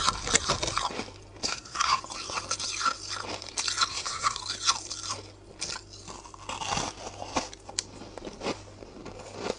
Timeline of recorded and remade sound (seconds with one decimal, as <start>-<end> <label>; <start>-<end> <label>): 0.0-1.4 recorded; 1.4-2.0 remade; 2.0-3.9 recorded; 3.9-4.4 remade; 4.4-9.6 recorded